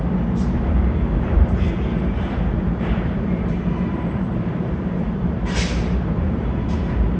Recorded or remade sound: remade